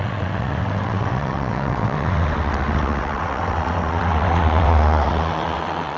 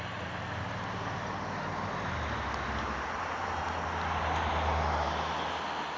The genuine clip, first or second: second